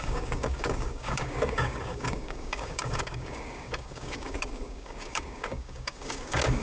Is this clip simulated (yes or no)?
yes